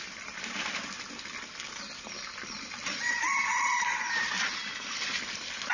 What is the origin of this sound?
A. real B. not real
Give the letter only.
A